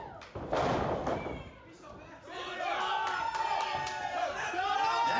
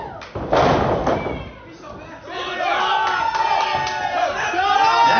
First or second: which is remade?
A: first